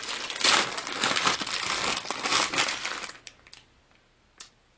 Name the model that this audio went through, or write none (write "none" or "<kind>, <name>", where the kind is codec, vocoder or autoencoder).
none